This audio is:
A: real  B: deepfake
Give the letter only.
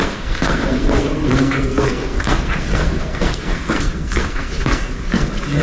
B